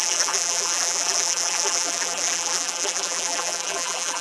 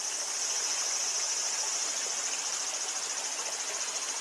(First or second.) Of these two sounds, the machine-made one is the first